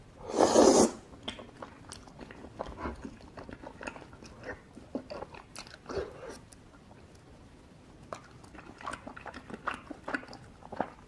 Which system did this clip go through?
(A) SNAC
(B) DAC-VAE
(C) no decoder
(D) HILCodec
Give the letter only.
C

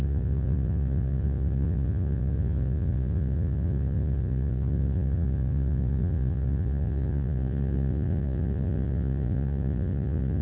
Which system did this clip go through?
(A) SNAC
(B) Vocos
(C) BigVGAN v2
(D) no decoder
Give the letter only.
B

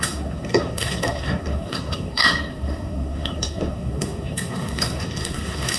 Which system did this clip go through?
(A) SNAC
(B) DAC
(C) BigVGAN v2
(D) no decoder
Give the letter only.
A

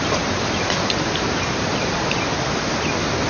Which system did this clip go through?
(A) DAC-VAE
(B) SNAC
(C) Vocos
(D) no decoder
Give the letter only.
D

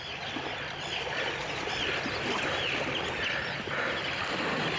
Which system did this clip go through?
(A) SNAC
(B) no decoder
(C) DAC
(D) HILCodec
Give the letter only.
B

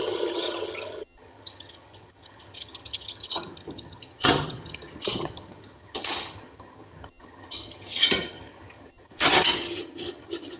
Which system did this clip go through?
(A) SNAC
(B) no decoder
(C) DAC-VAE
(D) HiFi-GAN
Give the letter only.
D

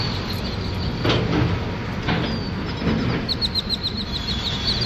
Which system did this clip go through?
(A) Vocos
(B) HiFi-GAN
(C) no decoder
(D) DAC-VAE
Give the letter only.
C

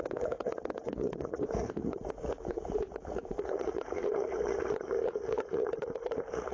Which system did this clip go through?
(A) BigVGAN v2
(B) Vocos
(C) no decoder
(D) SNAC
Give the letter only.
B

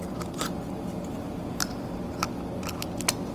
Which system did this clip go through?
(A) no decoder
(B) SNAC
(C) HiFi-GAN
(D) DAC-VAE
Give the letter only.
A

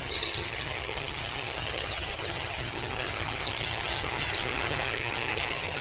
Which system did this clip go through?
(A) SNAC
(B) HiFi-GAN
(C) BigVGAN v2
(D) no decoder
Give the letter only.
B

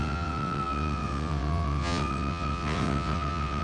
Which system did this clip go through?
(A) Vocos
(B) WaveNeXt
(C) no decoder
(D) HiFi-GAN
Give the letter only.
B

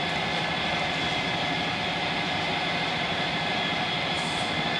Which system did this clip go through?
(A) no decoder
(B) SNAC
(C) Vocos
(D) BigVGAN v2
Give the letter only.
A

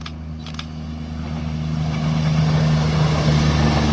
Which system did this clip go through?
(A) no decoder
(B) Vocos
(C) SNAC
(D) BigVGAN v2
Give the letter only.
A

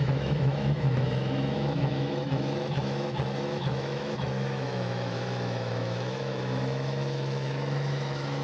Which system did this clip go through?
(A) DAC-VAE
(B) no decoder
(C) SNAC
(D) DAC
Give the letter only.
A